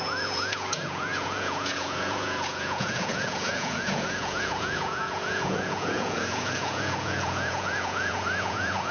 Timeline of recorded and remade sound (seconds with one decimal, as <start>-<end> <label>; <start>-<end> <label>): 0.0-8.9 remade